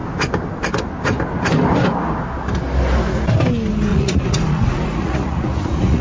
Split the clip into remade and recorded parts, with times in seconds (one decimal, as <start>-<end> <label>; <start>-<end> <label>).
0.0-3.9 recorded; 3.9-6.0 remade